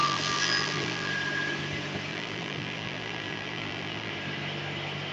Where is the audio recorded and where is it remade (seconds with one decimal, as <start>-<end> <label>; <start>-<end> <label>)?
0.0-1.1 remade; 1.1-2.1 recorded; 2.1-4.1 remade; 4.1-5.1 recorded